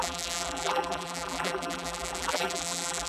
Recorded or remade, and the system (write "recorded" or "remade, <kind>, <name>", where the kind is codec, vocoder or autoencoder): remade, vocoder, BigVGAN v2